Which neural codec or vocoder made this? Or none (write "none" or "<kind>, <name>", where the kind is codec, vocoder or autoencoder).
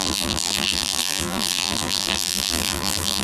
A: vocoder, BigVGAN v2